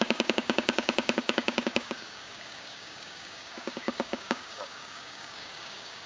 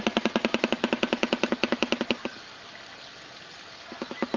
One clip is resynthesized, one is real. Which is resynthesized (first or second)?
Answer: first